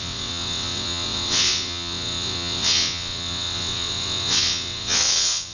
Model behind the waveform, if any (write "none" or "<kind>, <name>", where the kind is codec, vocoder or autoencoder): vocoder, WaveNeXt